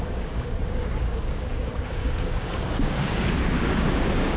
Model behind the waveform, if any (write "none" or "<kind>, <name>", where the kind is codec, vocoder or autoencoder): codec, DAC